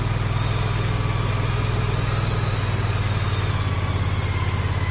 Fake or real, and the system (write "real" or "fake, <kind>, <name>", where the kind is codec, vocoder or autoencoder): real